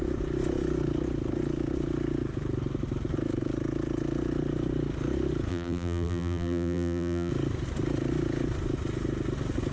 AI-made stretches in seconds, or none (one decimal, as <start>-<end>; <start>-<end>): 5.5-7.3